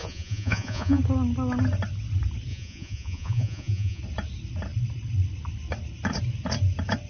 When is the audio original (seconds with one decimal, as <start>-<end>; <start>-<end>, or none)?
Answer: 1.0-2.5; 4.0-7.1